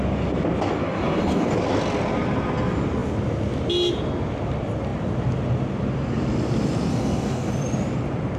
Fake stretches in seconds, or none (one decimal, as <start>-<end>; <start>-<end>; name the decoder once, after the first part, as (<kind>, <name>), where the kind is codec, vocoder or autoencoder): 0.8-1.5 (codec, DAC); 6.9-7.5